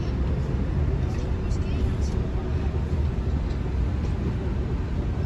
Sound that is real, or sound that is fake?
real